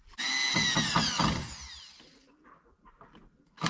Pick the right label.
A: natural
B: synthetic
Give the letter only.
A